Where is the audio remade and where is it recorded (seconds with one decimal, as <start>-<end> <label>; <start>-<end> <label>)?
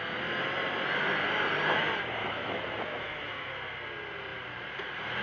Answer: 0.0-2.2 recorded; 2.2-3.5 remade; 3.5-5.2 recorded